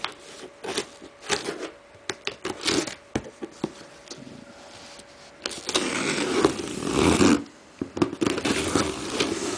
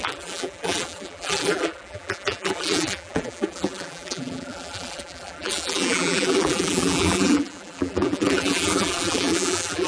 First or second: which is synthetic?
second